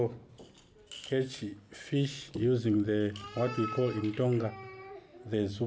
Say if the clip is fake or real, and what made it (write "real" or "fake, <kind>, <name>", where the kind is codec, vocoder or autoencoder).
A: real